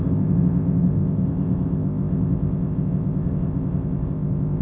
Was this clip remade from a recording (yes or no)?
yes